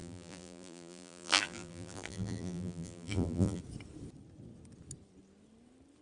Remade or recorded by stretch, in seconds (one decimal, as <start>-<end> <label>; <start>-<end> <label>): 0.0-3.6 remade; 3.6-6.0 recorded